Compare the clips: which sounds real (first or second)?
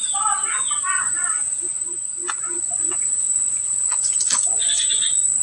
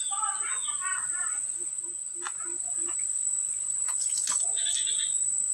second